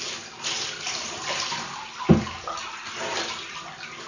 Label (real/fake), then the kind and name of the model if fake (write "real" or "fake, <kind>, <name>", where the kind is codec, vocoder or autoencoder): real